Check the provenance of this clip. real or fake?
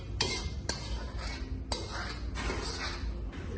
real